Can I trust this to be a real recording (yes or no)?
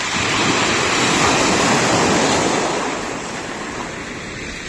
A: yes